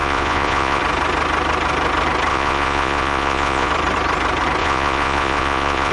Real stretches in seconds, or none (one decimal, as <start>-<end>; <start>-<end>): 0.8-2.3; 3.7-4.6